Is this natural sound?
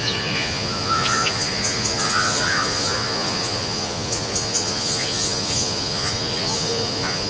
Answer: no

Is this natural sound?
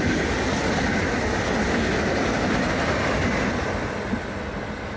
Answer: yes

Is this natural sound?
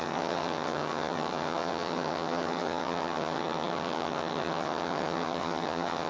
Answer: no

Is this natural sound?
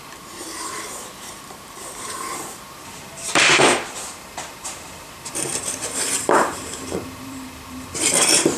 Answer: no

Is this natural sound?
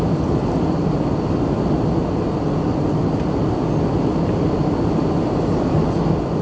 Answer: yes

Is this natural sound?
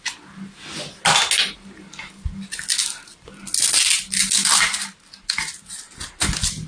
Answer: yes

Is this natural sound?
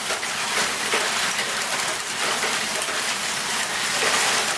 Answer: yes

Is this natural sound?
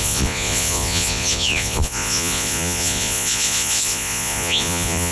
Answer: no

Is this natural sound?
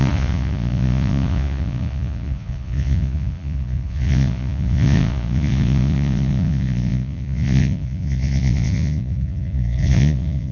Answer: no